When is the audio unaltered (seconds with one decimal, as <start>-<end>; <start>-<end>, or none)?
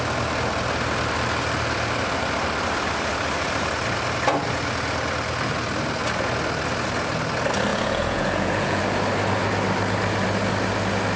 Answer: 0.0-7.7; 8.8-11.2